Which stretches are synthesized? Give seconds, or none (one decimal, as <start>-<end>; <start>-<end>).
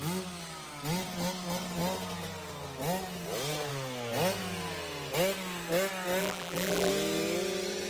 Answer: 6.2-6.9